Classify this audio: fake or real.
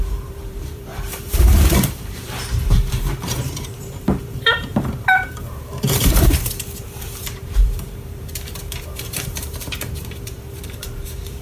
fake